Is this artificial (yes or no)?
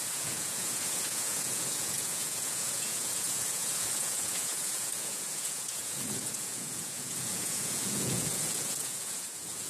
yes